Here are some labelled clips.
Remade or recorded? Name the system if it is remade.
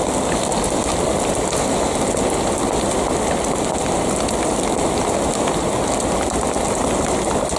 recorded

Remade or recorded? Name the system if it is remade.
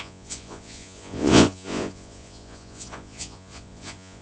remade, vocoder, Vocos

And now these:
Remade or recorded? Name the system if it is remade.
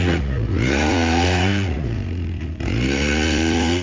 remade, vocoder, Vocos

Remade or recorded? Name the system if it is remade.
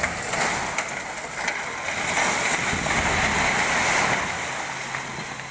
recorded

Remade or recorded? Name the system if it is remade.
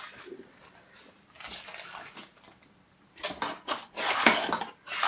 recorded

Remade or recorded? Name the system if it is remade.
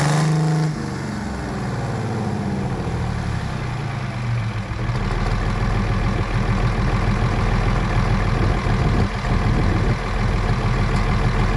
recorded